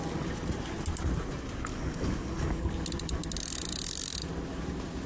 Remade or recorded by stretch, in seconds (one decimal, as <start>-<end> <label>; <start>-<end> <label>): 0.0-1.7 recorded; 1.7-2.6 remade; 2.6-5.1 recorded